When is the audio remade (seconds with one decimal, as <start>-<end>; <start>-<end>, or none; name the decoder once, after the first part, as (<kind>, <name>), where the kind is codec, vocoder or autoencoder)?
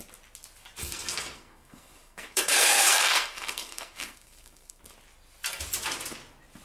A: 0.8-4.8 (codec, SNAC)